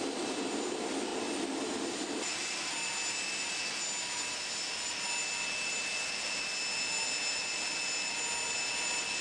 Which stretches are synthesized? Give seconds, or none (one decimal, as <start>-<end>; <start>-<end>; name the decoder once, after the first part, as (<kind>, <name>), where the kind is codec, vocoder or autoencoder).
none